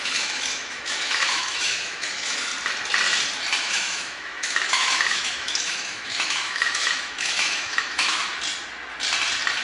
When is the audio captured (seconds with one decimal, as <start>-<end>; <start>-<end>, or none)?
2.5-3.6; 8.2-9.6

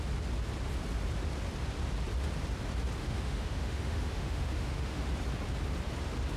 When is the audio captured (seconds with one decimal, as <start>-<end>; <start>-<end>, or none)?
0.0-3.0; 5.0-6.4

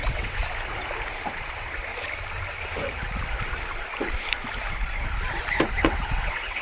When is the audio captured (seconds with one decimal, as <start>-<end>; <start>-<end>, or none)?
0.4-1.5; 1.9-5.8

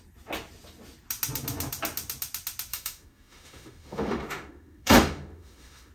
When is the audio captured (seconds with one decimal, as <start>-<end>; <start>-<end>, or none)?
0.0-2.7

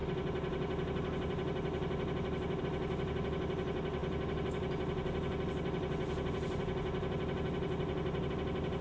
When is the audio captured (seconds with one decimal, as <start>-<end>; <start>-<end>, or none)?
0.0-8.8

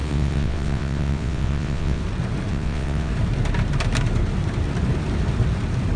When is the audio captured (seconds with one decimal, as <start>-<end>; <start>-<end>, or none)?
2.0-2.5; 3.1-6.0

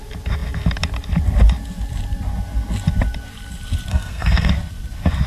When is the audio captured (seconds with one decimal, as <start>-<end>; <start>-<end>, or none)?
0.0-3.9; 4.5-5.3